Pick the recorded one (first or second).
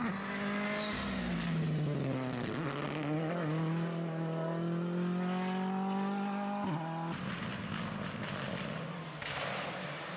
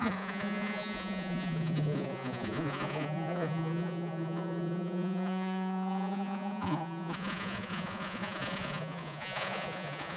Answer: first